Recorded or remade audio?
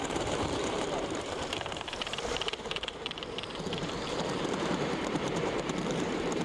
remade